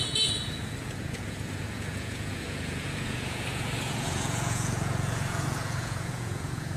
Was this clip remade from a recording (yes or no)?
yes